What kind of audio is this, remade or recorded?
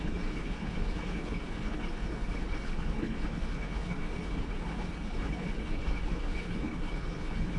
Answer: remade